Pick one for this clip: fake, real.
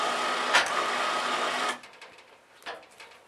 real